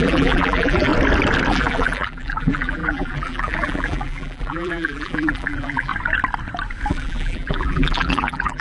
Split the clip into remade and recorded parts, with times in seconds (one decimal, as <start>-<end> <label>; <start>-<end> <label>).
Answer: 0.0-0.9 remade; 0.9-1.5 recorded; 1.5-5.9 remade; 5.9-6.9 recorded; 6.9-8.6 remade